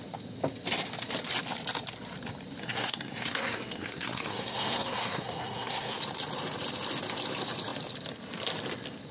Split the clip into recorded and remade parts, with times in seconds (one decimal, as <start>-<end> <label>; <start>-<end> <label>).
0.0-2.6 recorded; 2.6-6.0 remade; 6.0-9.1 recorded